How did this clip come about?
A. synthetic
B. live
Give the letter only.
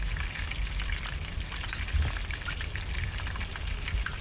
B